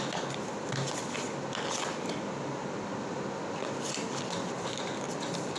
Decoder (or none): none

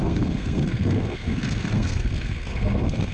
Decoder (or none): codec, SNAC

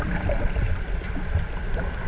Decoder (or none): vocoder, BigVGAN v2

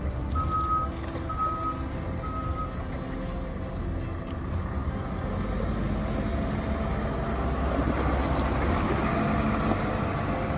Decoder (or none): none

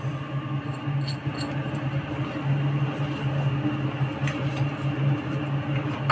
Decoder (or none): none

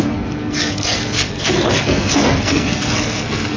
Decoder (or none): codec, SNAC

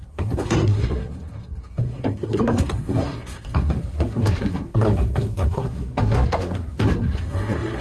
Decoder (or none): codec, SNAC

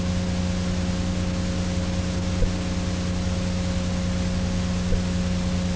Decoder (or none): none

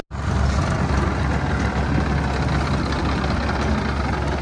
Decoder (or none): none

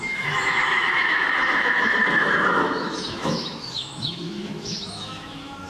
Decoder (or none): autoencoder, DAC-VAE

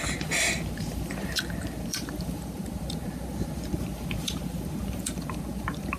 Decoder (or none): vocoder, BigVGAN v2